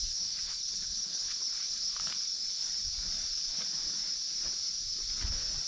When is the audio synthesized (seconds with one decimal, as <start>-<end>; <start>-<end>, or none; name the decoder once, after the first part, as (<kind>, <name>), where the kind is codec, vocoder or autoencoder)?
0.0-2.7 (codec, HILCodec)